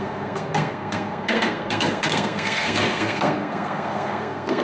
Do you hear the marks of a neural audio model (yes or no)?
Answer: yes